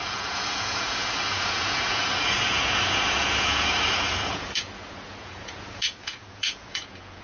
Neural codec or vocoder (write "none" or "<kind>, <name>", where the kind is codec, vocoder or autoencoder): vocoder, Vocos